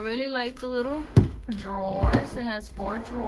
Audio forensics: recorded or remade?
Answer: remade